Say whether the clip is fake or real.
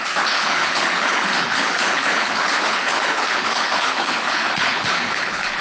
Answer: fake